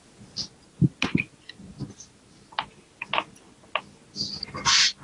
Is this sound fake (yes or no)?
no